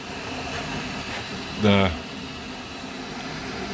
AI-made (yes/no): no